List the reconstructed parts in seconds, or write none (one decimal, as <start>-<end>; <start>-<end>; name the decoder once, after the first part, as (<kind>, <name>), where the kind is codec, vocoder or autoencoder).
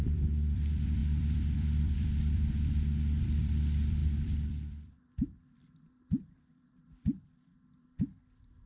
0.0-8.7 (vocoder, BigVGAN v2)